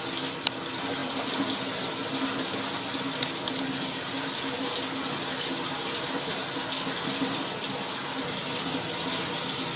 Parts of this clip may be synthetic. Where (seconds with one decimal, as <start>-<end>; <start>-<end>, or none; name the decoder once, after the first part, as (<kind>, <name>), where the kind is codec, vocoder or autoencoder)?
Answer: none